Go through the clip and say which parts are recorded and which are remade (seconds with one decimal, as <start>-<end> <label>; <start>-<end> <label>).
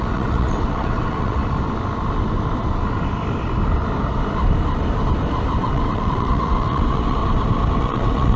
0.0-1.4 remade; 1.4-5.6 recorded; 5.6-7.2 remade; 7.2-7.8 recorded; 7.8-8.4 remade